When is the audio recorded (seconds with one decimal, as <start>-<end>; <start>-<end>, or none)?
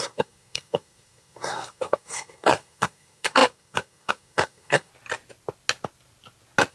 4.9-6.7